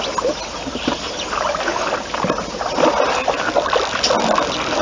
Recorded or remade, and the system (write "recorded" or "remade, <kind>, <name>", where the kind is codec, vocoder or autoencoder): recorded